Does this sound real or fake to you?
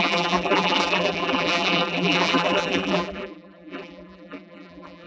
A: fake